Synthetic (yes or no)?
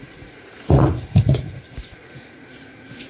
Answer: yes